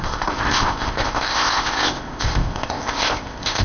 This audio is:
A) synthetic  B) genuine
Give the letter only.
A